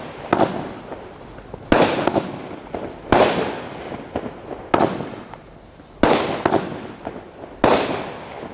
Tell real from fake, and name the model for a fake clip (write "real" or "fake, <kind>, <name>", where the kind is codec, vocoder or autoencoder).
real